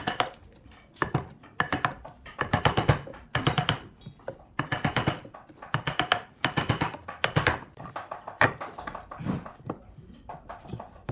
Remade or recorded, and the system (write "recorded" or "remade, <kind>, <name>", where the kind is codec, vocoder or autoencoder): recorded